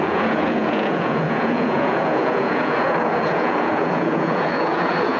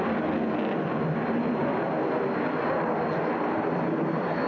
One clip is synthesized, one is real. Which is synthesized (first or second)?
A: first